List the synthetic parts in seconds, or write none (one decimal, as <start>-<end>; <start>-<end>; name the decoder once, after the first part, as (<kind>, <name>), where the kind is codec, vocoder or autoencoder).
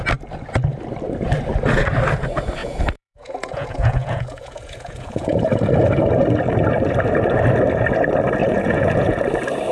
2.6-5.4 (vocoder, Vocos); 8.4-9.2